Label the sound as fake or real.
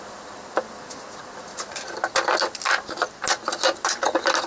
real